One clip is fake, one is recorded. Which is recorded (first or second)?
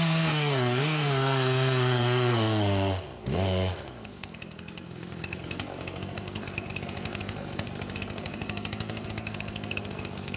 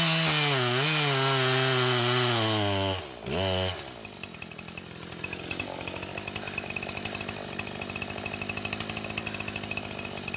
second